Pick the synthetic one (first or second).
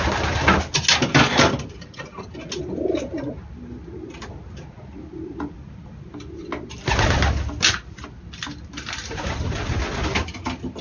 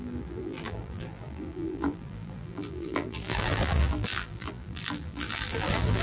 second